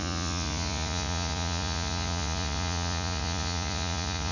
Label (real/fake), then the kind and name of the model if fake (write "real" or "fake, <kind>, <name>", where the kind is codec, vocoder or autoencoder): fake, vocoder, Vocos